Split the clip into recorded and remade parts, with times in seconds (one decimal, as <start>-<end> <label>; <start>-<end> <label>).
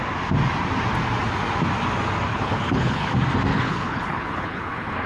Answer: 0.0-2.3 recorded; 2.3-3.1 remade; 3.1-3.5 recorded; 3.5-5.1 remade